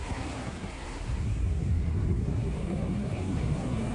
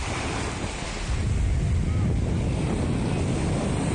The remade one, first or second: first